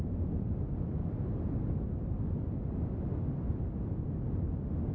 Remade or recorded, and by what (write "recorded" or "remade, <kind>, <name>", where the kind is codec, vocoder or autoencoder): recorded